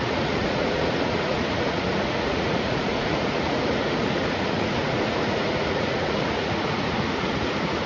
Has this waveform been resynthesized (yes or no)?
yes